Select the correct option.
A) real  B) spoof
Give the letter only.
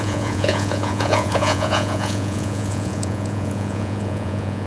B